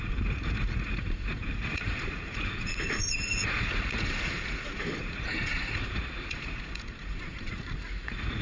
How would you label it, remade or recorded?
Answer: remade